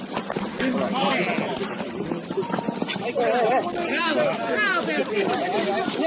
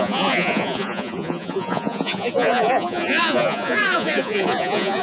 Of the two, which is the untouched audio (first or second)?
first